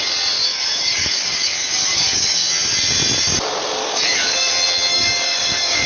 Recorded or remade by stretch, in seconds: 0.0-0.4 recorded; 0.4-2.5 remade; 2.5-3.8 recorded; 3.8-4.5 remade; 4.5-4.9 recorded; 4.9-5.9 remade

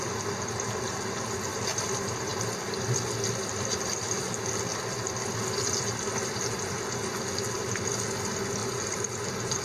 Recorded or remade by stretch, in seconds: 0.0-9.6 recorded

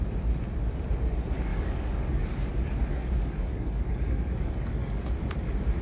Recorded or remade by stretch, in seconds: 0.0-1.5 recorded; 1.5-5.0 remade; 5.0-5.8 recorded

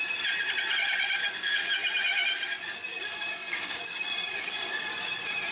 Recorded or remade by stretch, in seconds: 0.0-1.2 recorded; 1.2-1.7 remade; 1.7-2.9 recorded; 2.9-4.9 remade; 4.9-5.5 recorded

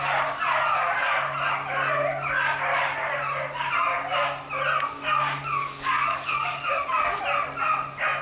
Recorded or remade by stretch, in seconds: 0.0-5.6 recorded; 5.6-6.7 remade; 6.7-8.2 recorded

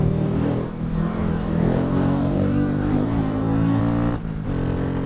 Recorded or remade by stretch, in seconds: 0.0-3.8 remade; 3.8-5.1 recorded